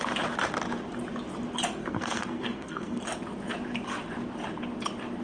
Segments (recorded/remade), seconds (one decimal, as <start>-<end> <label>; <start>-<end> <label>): 0.0-1.8 recorded; 1.8-3.0 remade; 3.0-5.2 recorded